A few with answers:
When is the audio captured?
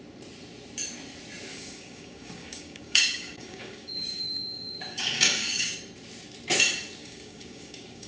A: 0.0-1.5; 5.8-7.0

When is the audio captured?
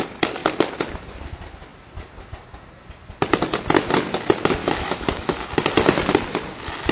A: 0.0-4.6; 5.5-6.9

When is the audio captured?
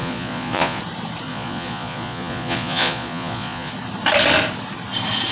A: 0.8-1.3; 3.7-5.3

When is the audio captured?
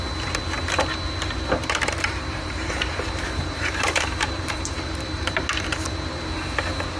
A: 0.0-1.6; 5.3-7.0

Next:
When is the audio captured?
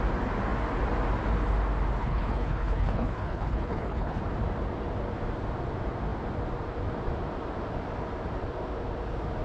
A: 0.0-2.0; 4.2-9.4